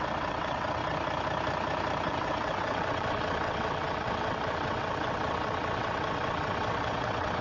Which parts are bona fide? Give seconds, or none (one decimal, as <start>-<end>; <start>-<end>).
0.8-2.1